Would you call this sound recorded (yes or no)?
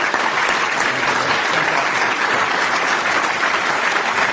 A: yes